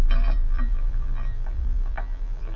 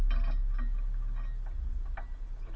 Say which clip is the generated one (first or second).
first